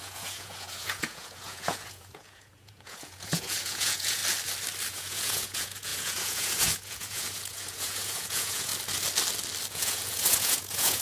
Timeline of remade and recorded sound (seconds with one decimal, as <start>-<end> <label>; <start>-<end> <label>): 0.0-4.2 remade; 4.2-4.9 recorded; 4.9-8.7 remade; 8.7-9.7 recorded; 9.7-11.0 remade